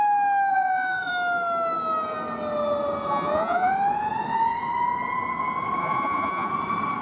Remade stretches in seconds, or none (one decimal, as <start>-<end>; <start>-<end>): 0.5-1.1; 3.1-3.7; 5.8-6.5